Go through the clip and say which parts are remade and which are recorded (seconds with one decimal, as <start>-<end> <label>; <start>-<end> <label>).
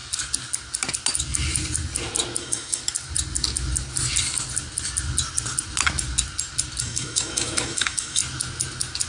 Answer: 0.0-2.4 recorded; 2.4-2.8 remade; 2.8-6.8 recorded; 6.8-8.2 remade; 8.2-9.1 recorded